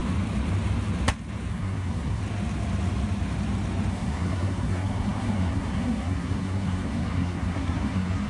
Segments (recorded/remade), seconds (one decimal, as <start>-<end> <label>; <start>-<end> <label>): 0.0-1.5 recorded; 1.5-2.2 remade; 2.2-3.9 recorded; 3.9-8.3 remade